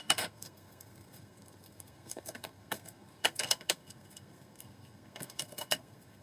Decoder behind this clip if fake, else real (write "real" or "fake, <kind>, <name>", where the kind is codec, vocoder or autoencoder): fake, codec, SNAC